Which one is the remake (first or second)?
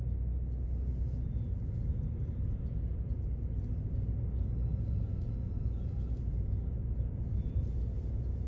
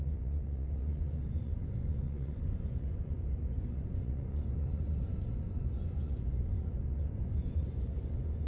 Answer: second